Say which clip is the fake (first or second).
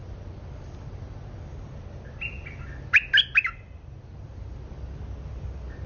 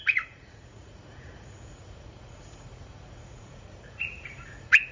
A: second